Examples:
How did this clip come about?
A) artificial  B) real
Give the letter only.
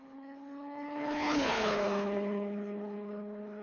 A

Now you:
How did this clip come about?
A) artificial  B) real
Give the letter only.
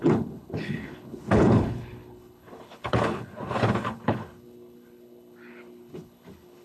A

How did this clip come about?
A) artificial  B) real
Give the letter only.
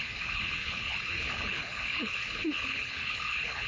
A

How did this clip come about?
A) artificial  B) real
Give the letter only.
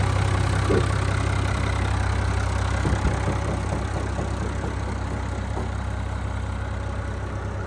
B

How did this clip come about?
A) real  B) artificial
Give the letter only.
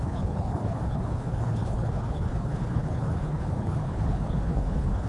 B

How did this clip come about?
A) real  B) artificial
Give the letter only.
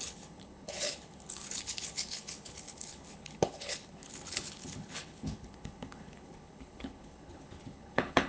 B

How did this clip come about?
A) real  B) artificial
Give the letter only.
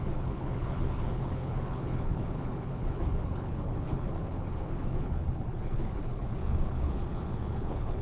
B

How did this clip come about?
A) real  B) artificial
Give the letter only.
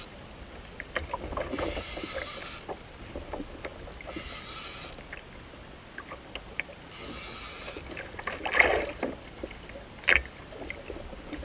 A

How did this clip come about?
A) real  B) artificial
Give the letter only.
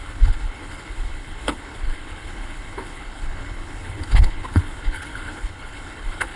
B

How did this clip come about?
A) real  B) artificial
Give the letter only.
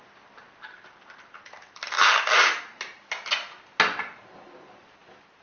A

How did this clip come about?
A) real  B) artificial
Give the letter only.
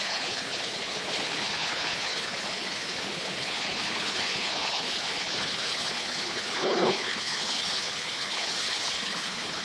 B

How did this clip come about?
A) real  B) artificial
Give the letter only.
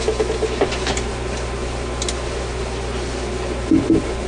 A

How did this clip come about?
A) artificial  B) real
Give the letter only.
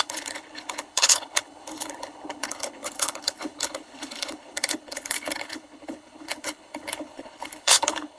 A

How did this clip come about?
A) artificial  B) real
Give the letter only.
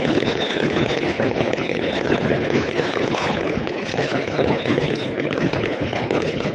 A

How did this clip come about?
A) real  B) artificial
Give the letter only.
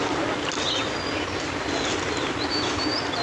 A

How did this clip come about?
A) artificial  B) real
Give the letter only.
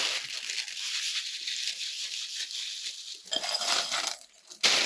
B